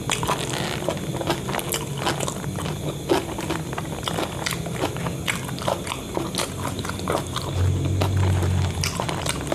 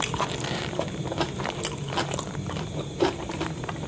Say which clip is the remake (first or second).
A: second